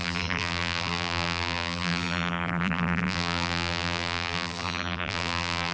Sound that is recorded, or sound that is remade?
remade